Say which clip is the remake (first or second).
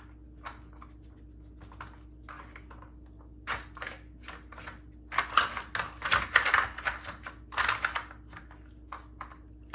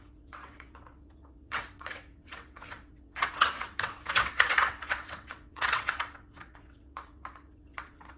second